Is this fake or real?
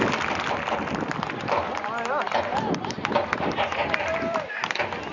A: fake